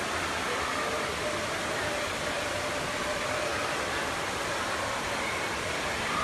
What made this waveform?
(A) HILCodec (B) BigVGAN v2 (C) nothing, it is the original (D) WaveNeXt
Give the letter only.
C